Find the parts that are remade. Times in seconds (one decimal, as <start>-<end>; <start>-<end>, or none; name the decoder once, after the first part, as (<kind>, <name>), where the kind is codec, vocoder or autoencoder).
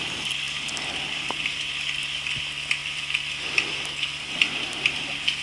none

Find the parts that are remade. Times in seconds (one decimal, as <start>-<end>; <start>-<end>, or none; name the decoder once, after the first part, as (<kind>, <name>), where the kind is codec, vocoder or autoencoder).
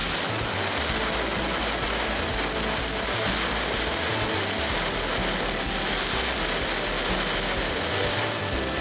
none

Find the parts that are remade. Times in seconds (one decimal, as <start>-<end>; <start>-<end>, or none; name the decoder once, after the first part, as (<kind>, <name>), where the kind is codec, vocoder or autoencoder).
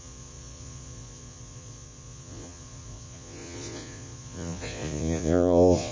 0.0-5.9 (vocoder, Vocos)